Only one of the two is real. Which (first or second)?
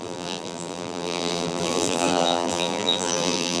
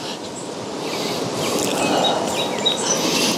second